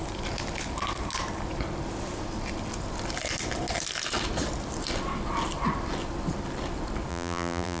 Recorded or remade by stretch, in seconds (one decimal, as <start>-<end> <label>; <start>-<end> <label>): 0.0-7.1 recorded; 7.1-7.8 remade